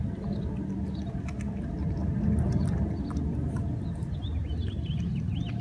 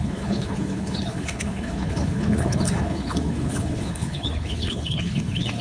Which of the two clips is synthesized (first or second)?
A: second